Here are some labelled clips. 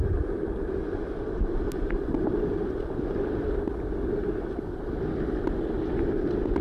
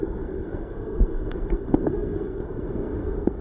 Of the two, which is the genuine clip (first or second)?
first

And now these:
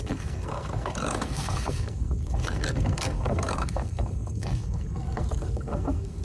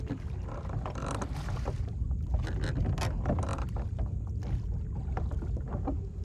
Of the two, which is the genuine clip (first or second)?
second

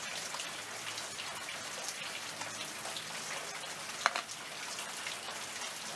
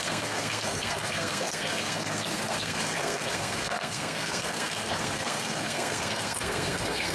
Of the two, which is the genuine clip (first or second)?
first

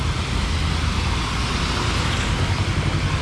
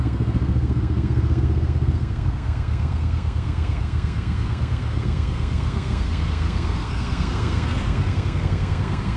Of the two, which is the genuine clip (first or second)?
first